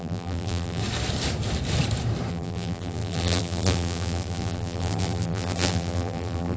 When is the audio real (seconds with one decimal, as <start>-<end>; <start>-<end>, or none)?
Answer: 0.8-2.3